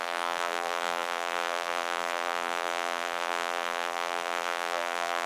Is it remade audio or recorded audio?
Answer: remade